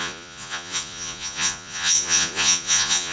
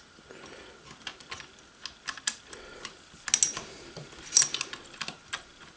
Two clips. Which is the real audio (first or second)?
second